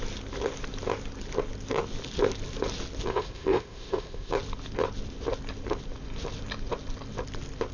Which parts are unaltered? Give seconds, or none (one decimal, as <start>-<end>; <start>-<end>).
0.0-3.1; 4.3-7.7